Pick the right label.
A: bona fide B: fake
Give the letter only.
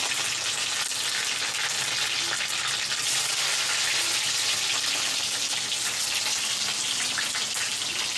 A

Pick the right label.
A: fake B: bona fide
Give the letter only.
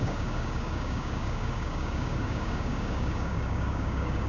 A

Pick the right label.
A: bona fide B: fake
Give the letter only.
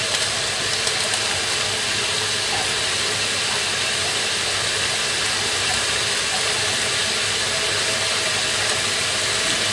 A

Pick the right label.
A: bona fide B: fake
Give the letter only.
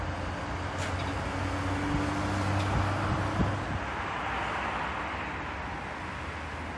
A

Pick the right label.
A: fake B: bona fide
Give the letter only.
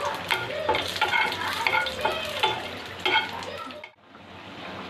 B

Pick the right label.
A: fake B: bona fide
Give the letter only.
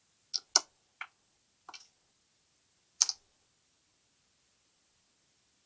B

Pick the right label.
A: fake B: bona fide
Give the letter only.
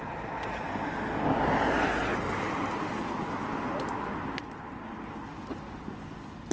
B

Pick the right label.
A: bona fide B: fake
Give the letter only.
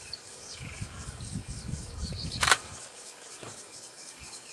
B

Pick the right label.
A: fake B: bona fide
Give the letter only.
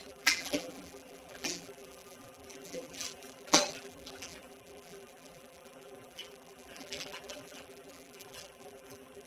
A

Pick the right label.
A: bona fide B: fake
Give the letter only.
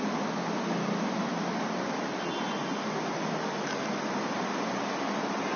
A